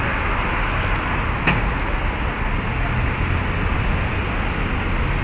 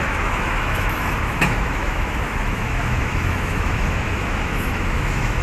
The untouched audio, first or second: first